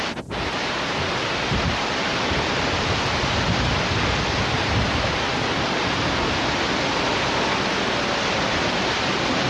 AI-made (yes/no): no